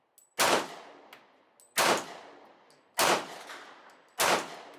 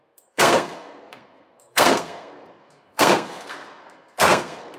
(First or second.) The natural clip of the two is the first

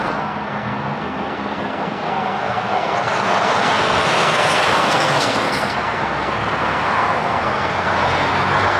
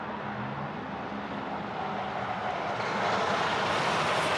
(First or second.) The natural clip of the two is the second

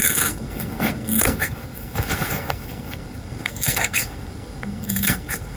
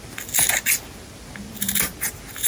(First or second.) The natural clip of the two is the second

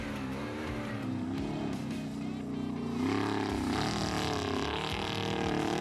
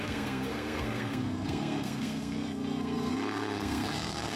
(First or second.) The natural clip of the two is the first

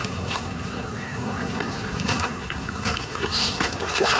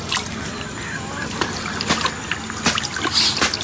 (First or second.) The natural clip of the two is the second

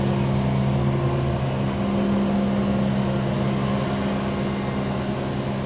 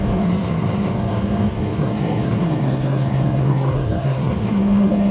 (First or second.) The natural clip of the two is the first